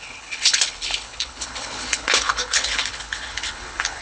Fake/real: fake